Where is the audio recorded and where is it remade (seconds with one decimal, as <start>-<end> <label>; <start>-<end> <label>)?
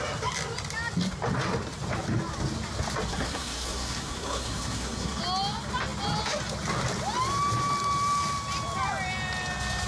0.0-3.1 recorded; 3.1-5.2 remade; 5.2-9.9 recorded